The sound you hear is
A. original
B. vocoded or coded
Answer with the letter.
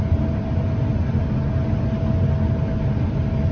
A